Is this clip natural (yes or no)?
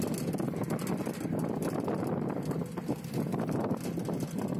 yes